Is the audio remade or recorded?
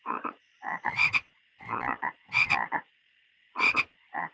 remade